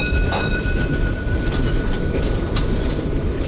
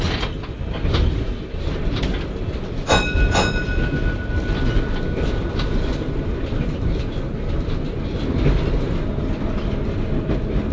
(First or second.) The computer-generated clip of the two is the first